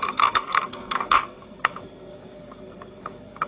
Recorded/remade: remade